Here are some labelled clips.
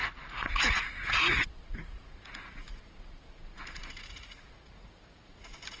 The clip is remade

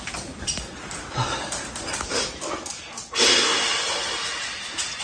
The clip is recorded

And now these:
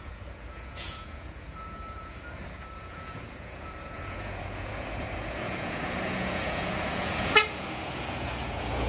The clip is remade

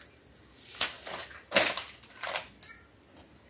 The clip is recorded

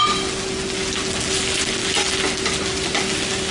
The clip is recorded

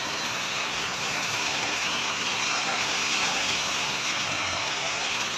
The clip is remade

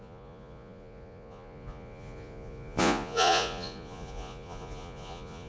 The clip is remade